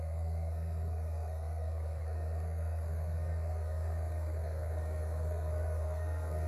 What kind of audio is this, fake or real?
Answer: fake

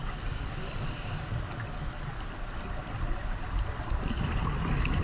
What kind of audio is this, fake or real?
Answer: real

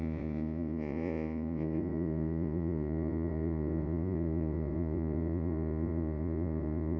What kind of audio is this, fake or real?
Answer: fake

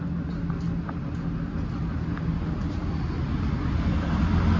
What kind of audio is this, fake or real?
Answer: real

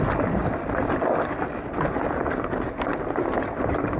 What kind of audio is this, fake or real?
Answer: real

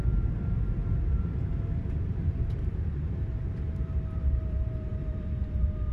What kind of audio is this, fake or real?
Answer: fake